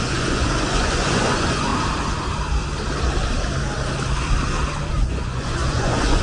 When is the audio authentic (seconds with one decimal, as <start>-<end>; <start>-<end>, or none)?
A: 1.7-4.9